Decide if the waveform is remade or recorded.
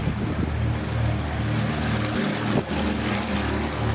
recorded